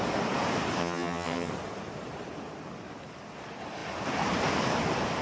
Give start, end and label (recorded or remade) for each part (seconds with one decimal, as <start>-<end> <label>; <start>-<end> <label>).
0.0-0.8 recorded; 0.8-1.5 remade; 1.5-5.2 recorded